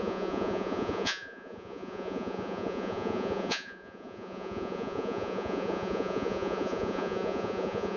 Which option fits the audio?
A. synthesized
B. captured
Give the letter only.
A